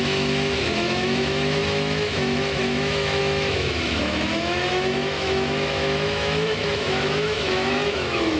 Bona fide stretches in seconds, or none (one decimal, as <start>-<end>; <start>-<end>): none